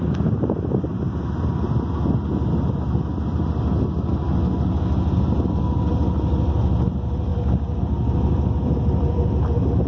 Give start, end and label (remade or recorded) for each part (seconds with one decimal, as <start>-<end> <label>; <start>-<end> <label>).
0.0-9.9 recorded